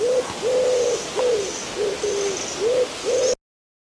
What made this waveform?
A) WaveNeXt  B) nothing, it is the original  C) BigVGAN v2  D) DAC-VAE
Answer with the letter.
B